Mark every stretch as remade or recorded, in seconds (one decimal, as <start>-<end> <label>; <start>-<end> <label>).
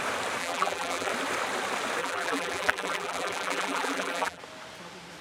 0.0-0.4 recorded; 0.4-1.1 remade; 1.1-2.0 recorded; 2.0-4.4 remade; 4.4-5.2 recorded